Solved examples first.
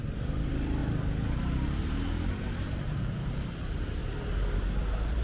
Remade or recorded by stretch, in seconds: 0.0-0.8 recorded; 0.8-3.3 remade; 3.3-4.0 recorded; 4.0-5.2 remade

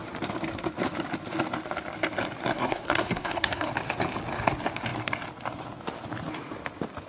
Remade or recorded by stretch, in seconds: 0.0-2.5 recorded; 2.5-3.7 remade; 3.7-7.1 recorded

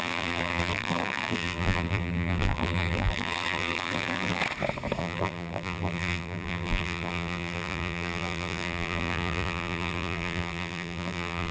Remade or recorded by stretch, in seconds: 0.0-4.4 remade; 4.4-5.0 recorded; 5.0-11.5 remade

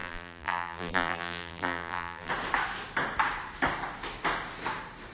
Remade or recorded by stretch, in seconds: 0.0-2.3 remade; 2.3-5.1 recorded

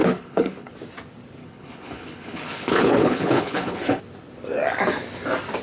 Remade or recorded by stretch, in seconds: 0.0-0.7 remade; 0.7-1.4 recorded; 1.4-4.0 remade; 4.0-5.6 recorded

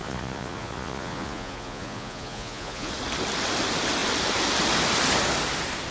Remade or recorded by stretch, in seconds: 0.0-2.9 remade; 2.9-5.9 recorded

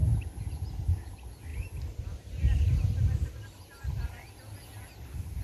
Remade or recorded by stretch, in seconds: 0.0-5.4 recorded